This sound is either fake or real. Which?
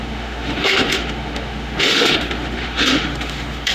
fake